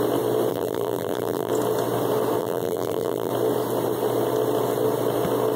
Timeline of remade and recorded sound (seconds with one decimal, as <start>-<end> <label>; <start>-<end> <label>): 0.0-0.5 recorded; 0.5-1.5 remade; 1.5-2.4 recorded; 2.4-3.3 remade; 3.3-5.6 recorded